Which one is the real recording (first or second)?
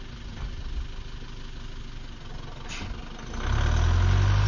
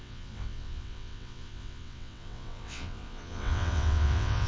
first